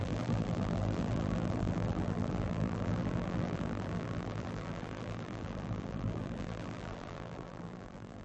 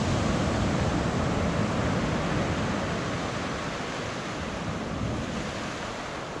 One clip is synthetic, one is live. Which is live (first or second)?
second